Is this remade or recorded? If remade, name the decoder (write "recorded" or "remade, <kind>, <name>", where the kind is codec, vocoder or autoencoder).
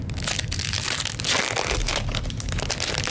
recorded